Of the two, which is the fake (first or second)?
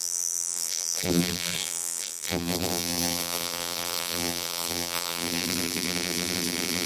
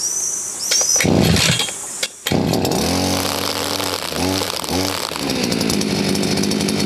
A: first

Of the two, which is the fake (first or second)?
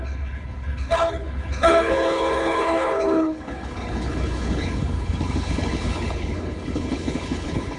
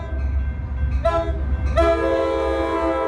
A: first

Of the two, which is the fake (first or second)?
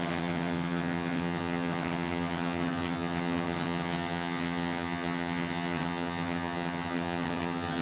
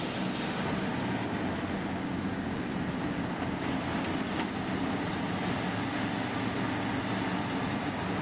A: first